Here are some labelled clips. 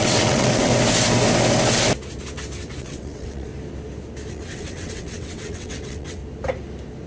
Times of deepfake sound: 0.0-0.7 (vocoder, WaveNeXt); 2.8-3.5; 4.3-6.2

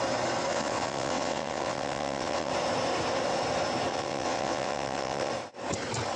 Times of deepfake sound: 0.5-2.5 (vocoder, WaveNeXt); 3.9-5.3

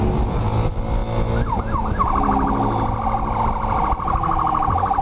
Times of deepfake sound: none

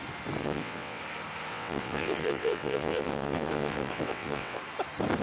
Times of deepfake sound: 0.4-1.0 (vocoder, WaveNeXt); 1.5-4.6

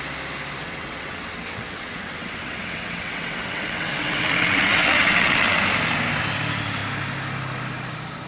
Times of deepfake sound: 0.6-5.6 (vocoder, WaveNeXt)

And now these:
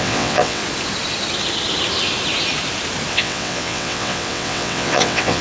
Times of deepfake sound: 0.0-0.6 (vocoder, WaveNeXt); 3.1-5.4